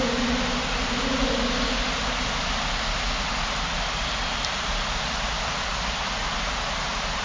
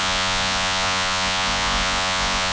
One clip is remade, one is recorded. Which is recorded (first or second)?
first